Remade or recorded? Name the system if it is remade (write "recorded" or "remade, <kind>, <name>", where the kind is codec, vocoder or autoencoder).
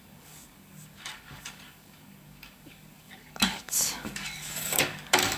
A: remade, codec, DAC